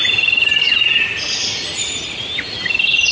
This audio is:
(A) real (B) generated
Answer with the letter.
A